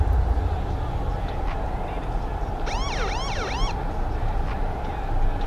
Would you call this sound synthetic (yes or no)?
no